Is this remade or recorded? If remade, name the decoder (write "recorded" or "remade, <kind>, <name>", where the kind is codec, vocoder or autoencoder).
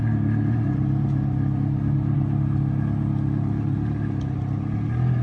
recorded